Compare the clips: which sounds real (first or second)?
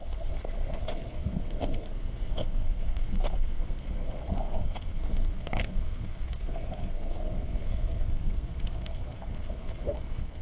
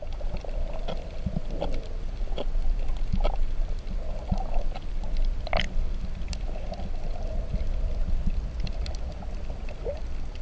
second